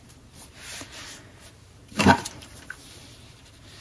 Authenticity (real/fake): fake